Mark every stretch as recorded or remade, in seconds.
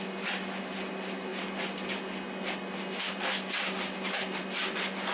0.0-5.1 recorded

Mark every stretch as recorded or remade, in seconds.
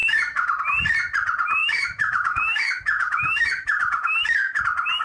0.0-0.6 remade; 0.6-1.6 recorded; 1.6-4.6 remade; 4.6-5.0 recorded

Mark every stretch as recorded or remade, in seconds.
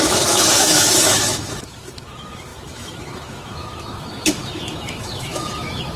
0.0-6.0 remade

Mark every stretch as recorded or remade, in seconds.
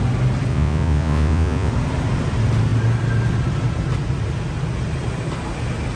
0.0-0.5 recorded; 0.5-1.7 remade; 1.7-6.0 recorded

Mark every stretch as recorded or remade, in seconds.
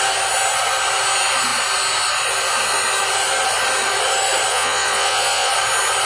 0.0-4.5 recorded; 4.5-5.5 remade; 5.5-6.1 recorded